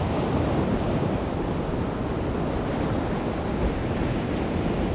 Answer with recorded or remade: recorded